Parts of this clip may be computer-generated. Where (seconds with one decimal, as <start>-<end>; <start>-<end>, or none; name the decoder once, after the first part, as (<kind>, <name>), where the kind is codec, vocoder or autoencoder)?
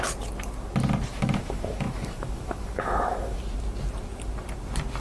1.1-3.4 (autoencoder, DAC-VAE)